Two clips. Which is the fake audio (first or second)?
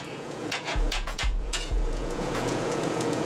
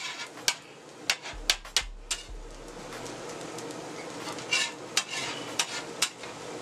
first